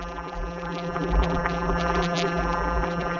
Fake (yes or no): yes